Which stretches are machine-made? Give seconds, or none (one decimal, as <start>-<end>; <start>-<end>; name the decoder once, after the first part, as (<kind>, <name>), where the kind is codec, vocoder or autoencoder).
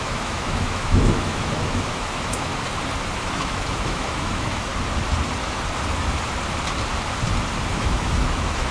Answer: 0.0-2.5 (autoencoder, DAC-VAE); 3.1-4.7; 7.7-8.7